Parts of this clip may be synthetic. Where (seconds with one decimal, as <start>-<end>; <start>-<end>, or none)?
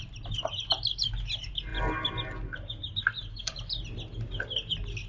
none